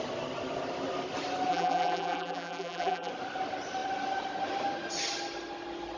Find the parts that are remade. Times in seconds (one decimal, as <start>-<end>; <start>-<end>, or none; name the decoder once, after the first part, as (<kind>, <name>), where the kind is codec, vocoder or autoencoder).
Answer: 1.5-3.1 (vocoder, BigVGAN v2)